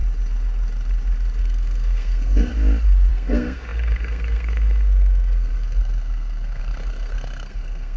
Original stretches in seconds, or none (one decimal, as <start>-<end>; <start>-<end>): 0.0-1.4; 2.5-3.1